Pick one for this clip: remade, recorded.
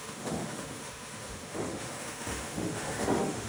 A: remade